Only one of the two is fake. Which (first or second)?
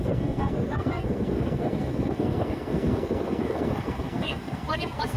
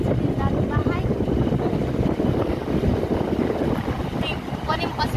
first